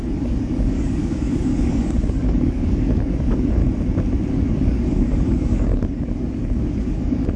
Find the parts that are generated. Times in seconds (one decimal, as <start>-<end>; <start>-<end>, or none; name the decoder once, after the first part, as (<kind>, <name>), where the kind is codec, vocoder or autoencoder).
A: 0.0-3.6 (codec, DAC); 4.3-7.4